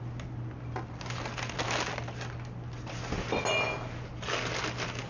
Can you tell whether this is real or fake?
real